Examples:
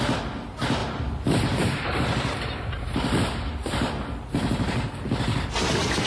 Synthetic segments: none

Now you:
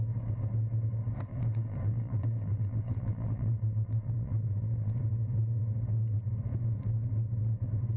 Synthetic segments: 1.3-5.0 (vocoder, WaveNeXt)